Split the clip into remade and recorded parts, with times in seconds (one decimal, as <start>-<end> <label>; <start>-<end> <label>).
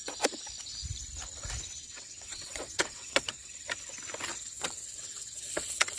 0.0-1.8 recorded; 1.8-3.5 remade; 3.5-4.3 recorded; 4.3-6.0 remade